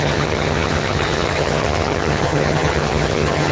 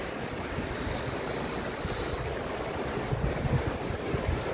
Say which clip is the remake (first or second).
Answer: first